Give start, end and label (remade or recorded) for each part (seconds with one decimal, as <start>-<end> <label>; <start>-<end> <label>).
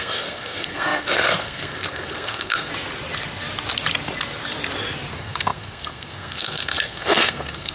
0.0-2.7 remade; 2.7-5.1 recorded; 5.1-7.7 remade